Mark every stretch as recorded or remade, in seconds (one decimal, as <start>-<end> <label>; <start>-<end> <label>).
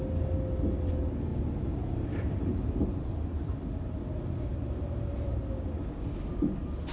0.0-1.3 recorded; 1.3-5.4 remade; 5.4-6.9 recorded